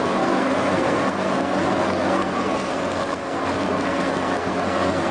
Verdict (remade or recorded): remade